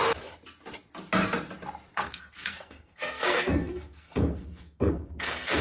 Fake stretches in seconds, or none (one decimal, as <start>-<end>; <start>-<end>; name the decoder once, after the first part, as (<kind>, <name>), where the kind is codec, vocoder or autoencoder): 1.9-5.6 (codec, SNAC)